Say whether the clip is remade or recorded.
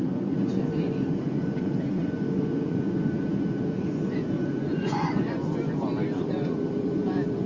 remade